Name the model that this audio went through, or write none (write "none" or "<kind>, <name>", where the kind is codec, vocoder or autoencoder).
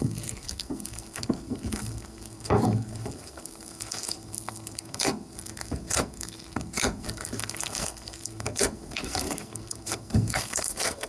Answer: codec, SNAC